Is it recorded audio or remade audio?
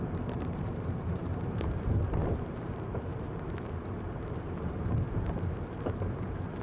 remade